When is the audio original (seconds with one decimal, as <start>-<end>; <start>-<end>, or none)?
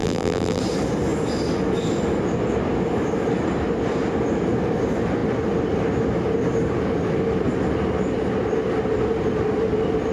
0.6-10.1